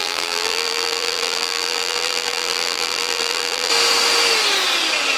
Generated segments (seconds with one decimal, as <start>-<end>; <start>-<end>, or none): 0.0-3.7